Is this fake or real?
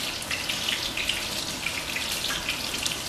real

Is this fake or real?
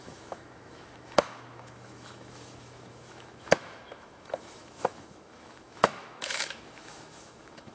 fake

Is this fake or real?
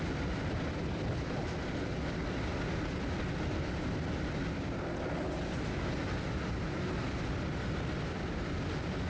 real